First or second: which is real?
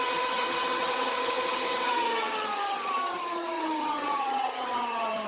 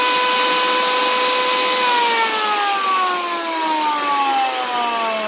second